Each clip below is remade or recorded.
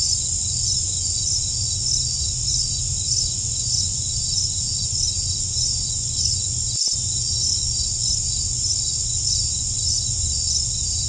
recorded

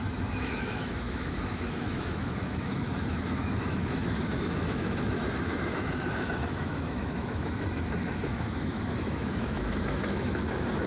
remade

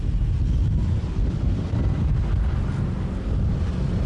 recorded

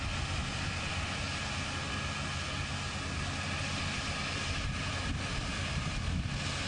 recorded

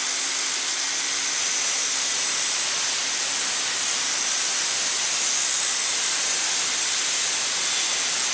recorded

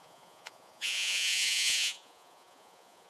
remade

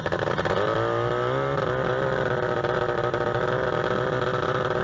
recorded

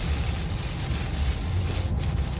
recorded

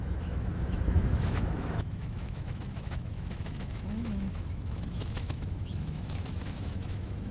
remade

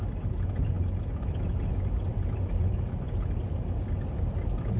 recorded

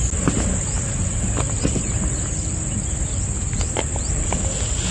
recorded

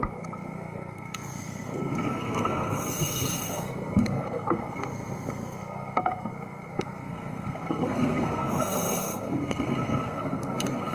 remade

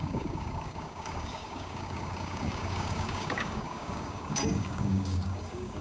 remade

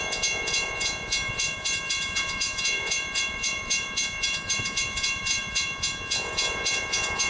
remade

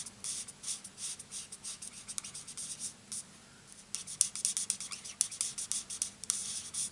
recorded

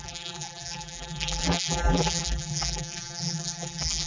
remade